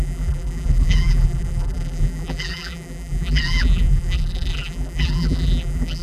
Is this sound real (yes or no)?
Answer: no